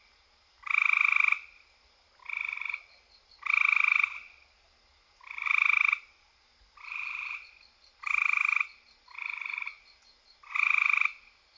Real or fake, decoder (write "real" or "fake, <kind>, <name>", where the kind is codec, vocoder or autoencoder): real